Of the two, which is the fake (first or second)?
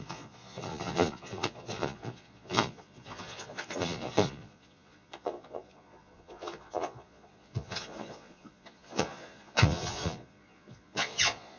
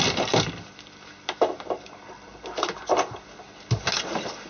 first